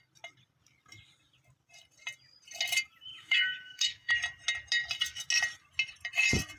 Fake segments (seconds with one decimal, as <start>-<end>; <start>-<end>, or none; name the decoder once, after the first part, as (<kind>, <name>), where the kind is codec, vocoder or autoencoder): 3.1-4.1 (autoencoder, DAC-VAE)

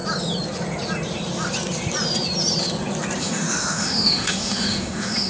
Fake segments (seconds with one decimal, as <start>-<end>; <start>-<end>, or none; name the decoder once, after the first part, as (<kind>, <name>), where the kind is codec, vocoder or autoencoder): 3.2-5.3 (autoencoder, DAC-VAE)

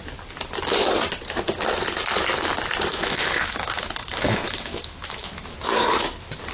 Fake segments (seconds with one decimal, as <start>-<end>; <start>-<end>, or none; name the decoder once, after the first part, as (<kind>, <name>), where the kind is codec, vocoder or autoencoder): 2.9-5.3 (autoencoder, DAC-VAE)

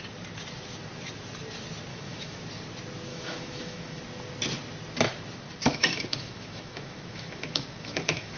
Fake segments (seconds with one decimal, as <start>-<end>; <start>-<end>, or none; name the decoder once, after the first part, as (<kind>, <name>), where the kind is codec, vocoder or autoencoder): 1.9-2.4 (autoencoder, DAC-VAE); 3.1-4.0; 5.7-8.4

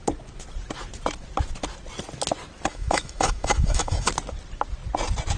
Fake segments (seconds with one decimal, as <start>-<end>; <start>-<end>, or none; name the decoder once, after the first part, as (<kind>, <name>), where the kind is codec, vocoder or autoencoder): 2.7-4.1 (autoencoder, DAC-VAE)

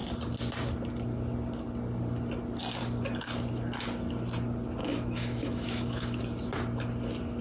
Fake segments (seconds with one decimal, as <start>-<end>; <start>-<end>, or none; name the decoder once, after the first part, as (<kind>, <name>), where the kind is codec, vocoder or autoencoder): 4.8-6.2 (autoencoder, DAC-VAE)